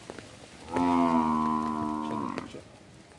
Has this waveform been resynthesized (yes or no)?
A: no